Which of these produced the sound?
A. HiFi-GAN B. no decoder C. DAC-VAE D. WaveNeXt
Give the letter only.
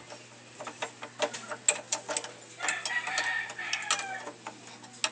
B